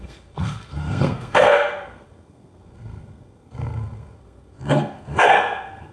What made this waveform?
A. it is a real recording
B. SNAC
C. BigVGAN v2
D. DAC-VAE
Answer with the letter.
B